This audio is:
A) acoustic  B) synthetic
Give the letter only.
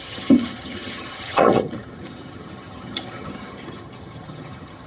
B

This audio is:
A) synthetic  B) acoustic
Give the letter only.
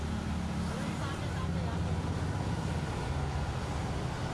B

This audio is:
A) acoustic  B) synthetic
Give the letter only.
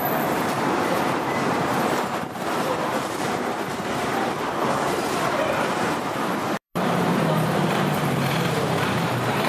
B